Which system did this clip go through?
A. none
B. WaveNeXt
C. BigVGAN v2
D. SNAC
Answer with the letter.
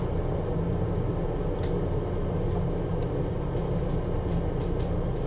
A